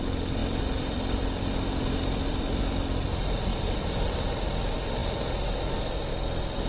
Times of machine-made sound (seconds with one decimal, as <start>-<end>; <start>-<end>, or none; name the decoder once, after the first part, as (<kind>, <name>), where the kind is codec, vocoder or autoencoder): 0.4-2.6 (vocoder, BigVGAN v2)